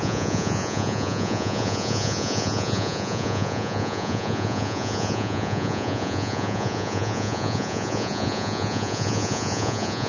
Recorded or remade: remade